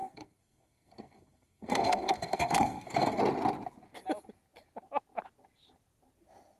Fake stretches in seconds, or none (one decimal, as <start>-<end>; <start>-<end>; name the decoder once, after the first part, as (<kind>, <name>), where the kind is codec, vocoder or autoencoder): 0.0-3.2 (codec, SNAC)